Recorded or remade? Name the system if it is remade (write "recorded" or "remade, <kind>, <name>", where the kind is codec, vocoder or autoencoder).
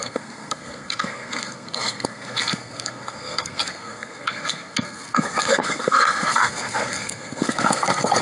remade, codec, SNAC